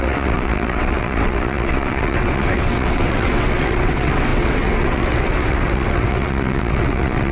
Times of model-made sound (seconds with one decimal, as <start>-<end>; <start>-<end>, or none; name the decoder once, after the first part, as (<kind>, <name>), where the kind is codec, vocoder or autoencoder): 0.0-7.3 (vocoder, WaveNeXt)